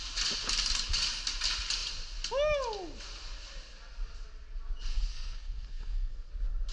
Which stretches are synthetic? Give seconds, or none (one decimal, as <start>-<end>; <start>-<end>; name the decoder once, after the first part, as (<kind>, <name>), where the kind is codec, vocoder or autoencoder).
4.9-6.3 (codec, SNAC)